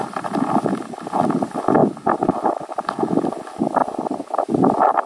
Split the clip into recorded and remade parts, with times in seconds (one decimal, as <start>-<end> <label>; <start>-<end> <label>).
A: 0.0-5.1 recorded